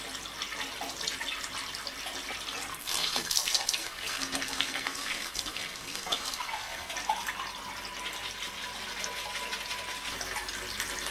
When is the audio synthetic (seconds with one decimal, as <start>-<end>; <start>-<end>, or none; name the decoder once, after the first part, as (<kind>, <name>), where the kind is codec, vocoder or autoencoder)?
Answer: 2.8-6.9 (codec, SNAC)